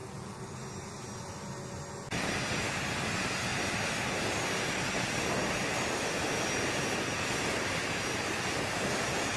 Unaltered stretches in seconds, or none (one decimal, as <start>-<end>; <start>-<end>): 0.0-9.4